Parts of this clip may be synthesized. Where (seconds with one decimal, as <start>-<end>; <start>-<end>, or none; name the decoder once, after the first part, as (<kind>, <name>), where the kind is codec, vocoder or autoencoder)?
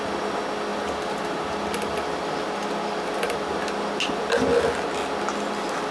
none